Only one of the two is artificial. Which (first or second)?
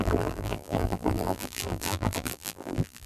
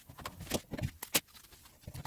first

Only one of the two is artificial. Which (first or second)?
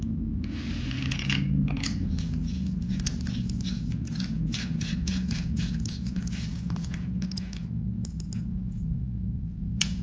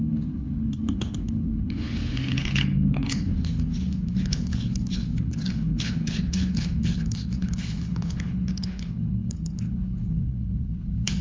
second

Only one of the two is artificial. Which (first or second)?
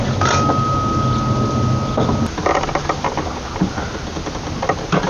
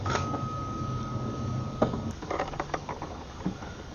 second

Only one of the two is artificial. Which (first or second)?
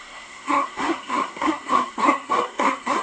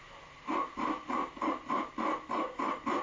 first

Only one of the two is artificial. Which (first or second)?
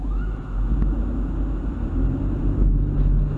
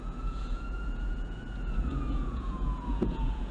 second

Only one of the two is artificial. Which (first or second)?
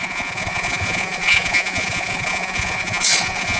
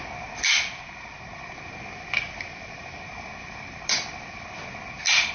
first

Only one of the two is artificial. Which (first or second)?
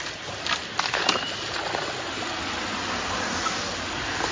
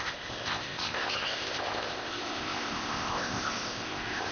second